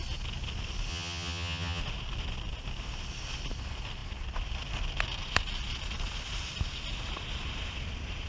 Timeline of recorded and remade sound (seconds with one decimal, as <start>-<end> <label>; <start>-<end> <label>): 0.0-0.9 recorded; 0.9-1.8 remade; 1.8-8.3 recorded